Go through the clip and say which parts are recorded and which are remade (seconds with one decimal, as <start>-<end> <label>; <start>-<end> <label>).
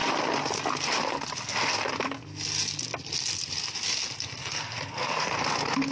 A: 0.0-4.4 recorded; 4.4-5.3 remade; 5.3-5.9 recorded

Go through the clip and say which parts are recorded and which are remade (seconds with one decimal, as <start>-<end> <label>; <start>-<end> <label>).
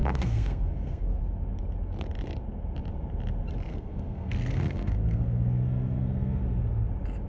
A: 0.0-1.2 remade; 1.2-3.7 recorded; 3.7-6.4 remade; 6.4-7.3 recorded